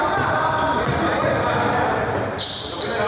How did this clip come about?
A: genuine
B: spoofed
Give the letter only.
A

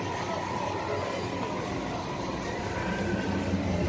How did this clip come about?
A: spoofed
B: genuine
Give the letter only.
B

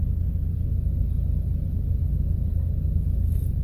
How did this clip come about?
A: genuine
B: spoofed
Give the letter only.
A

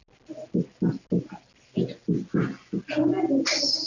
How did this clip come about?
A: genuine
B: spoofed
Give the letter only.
A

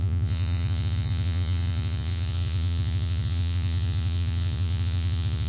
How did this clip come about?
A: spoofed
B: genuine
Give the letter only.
A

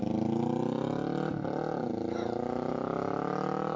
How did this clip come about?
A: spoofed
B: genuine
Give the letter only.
B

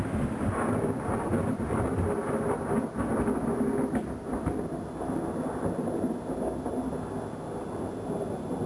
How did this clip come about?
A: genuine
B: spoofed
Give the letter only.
A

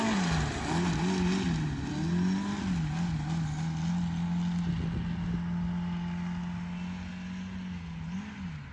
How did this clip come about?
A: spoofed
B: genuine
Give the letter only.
B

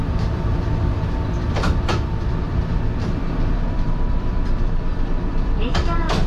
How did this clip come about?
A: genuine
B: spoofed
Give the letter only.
B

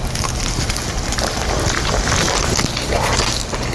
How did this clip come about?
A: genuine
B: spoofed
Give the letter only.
A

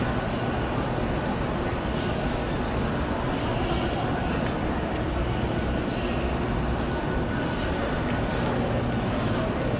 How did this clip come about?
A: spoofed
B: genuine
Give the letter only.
B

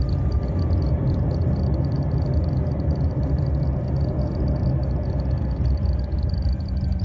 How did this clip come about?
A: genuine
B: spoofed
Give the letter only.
A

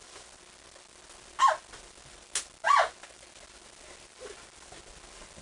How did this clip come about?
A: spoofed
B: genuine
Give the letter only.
B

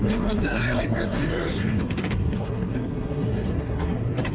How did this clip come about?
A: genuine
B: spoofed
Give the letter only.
B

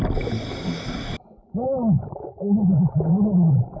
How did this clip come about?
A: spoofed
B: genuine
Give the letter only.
B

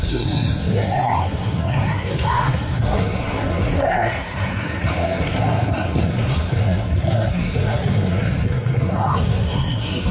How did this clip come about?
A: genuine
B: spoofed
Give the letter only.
B